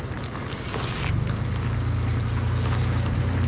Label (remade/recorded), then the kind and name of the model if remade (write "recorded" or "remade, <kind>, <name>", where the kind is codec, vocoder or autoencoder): recorded